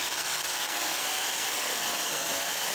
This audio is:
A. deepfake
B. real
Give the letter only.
A